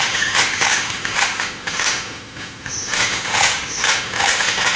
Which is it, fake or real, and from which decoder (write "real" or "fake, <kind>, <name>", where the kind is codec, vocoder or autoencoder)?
fake, autoencoder, DAC-VAE